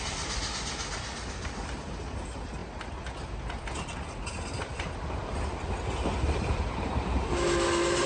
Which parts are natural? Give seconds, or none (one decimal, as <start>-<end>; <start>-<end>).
0.0-8.1